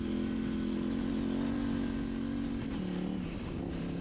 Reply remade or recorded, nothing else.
recorded